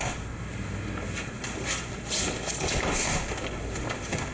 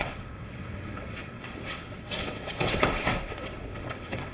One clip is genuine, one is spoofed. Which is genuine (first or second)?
first